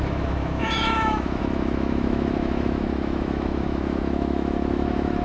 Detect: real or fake fake